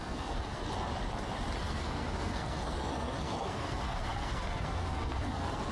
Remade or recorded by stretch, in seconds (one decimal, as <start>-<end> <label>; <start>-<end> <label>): 0.0-0.6 remade; 0.6-1.6 recorded; 1.6-5.7 remade

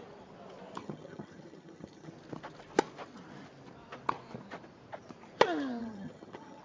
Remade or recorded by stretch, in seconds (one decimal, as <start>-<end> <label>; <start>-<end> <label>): 0.0-0.8 recorded; 0.8-2.1 remade; 2.1-5.8 recorded; 5.8-6.6 remade

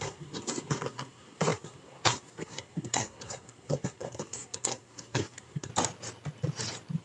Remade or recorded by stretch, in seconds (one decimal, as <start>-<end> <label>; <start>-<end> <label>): 0.0-5.7 remade; 5.7-7.0 recorded

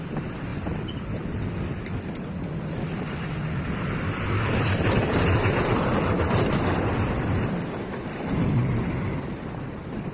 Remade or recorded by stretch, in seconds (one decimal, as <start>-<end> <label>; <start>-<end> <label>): 0.0-10.1 recorded

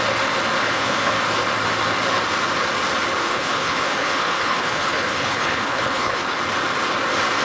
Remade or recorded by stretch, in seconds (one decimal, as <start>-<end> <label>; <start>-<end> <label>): 0.0-0.6 recorded; 0.6-1.1 remade; 1.1-3.2 recorded; 3.2-6.4 remade; 6.4-7.4 recorded

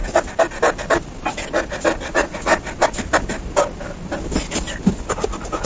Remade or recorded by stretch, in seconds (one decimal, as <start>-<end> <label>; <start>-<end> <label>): 0.0-2.1 recorded; 2.1-2.5 remade; 2.5-5.1 recorded; 5.1-5.7 remade